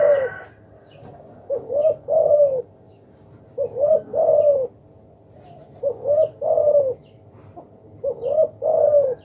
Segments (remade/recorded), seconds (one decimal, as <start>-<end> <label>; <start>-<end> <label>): 0.0-1.0 recorded; 1.0-3.3 remade; 3.3-9.2 recorded